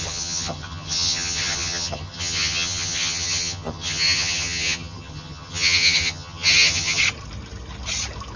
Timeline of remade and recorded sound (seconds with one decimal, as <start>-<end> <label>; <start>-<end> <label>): 0.0-7.0 remade; 7.0-8.4 recorded